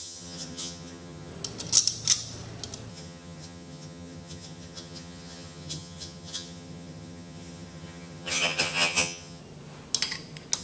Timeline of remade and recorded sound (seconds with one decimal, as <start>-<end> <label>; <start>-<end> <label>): 0.0-1.3 remade; 1.3-2.9 recorded; 2.9-9.4 remade; 9.4-10.6 recorded